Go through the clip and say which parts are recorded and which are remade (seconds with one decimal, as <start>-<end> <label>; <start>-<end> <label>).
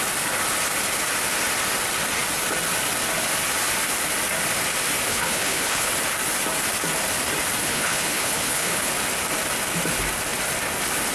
0.0-5.1 recorded; 5.1-5.9 remade; 5.9-7.6 recorded; 7.6-8.9 remade; 8.9-11.1 recorded